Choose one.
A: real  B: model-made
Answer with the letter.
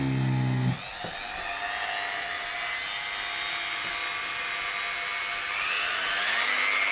A